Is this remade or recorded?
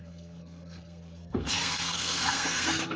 remade